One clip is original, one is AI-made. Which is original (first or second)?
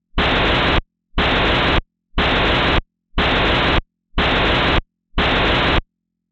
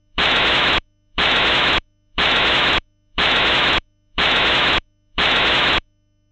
first